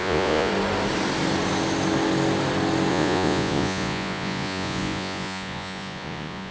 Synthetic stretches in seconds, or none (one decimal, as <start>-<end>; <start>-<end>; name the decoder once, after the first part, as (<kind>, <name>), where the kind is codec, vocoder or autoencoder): 0.0-0.5 (vocoder, Vocos); 2.9-6.5

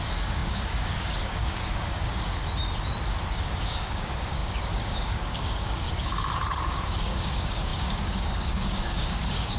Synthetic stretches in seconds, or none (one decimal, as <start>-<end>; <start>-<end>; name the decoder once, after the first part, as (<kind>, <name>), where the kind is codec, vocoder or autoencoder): 0.0-2.4 (codec, DAC); 3.3-9.6